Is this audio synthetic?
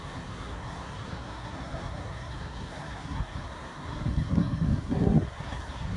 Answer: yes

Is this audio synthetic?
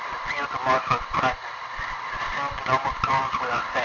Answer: yes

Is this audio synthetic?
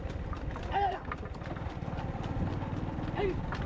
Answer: no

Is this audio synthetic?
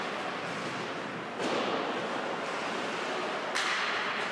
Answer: yes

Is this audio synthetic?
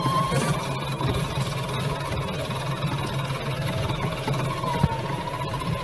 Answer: no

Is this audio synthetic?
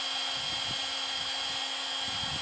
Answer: no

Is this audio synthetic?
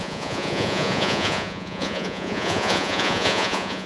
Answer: yes